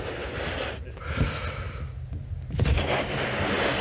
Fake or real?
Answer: real